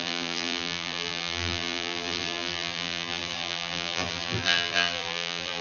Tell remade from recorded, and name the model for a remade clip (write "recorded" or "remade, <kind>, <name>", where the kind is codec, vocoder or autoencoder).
remade, vocoder, BigVGAN v2